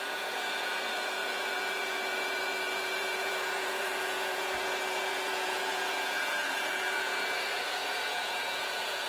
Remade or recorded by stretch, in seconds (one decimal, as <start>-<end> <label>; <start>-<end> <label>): 0.0-9.1 remade